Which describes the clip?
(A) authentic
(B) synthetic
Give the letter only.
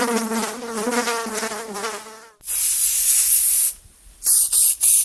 A